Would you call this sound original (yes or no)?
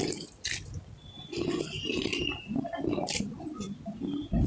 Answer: yes